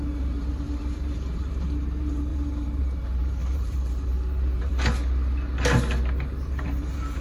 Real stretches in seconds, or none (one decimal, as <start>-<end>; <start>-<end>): 4.7-6.4